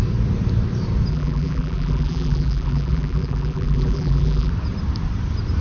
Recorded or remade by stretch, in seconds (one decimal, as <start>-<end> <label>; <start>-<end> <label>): 0.0-1.1 recorded; 1.1-4.5 remade; 4.5-5.6 recorded